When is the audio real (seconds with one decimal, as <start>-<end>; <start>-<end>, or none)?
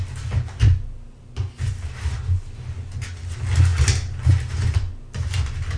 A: 0.0-5.8